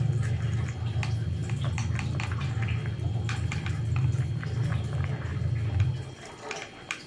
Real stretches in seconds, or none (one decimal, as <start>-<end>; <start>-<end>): 0.0-7.1